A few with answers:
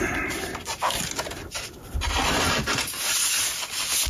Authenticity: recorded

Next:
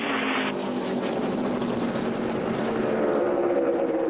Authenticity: recorded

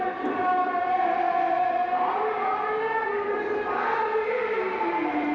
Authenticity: recorded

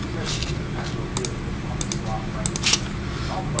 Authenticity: recorded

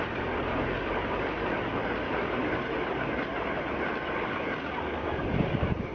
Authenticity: recorded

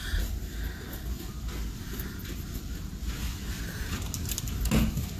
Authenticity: recorded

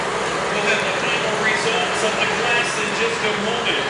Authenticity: recorded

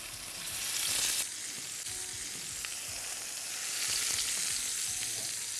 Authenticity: recorded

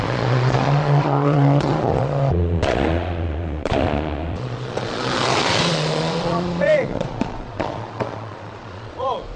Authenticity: remade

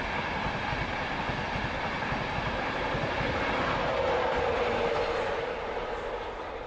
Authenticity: recorded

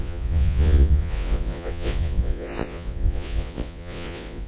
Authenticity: remade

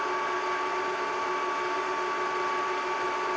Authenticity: recorded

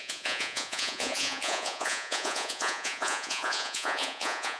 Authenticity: remade